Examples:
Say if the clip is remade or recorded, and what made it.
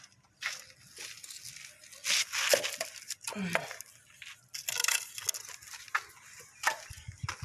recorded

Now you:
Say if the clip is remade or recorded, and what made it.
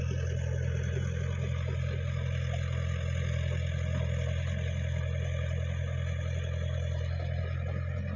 recorded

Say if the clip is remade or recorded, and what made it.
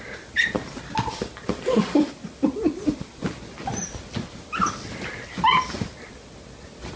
recorded